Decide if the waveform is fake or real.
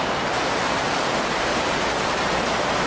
fake